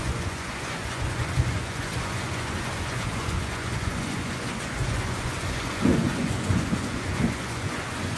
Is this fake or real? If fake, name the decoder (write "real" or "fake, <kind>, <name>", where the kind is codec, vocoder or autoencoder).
fake, vocoder, Vocos